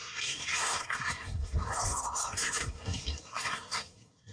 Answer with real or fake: fake